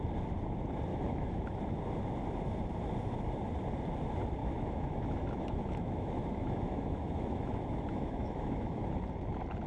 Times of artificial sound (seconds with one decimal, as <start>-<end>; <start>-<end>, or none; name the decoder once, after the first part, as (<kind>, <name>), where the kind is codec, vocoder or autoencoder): 0.9-1.6 (autoencoder, DAC-VAE); 4.4-8.9